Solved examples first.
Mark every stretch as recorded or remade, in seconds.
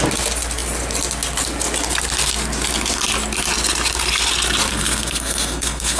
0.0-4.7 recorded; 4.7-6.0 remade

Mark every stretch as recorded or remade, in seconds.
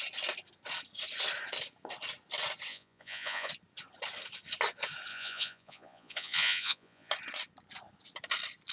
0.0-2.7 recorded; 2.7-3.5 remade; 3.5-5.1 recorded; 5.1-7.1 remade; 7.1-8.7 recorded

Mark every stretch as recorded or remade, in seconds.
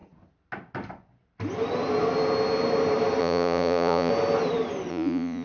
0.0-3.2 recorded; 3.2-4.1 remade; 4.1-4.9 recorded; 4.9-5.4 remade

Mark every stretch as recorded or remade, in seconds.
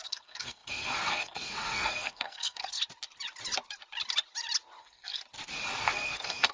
0.0-2.8 remade; 2.8-4.8 recorded; 4.8-5.2 remade; 5.2-5.8 recorded; 5.8-6.5 remade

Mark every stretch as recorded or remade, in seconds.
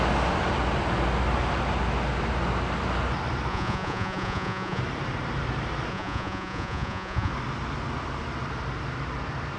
0.0-3.5 recorded; 3.5-4.8 remade; 4.8-5.9 recorded; 5.9-7.3 remade; 7.3-9.6 recorded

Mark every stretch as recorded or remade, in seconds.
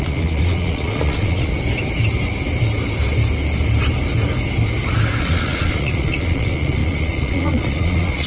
0.0-1.5 remade; 1.5-5.2 recorded; 5.2-8.3 remade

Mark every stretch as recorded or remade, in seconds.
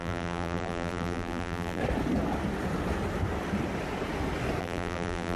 0.0-1.8 remade; 1.8-4.6 recorded; 4.6-5.4 remade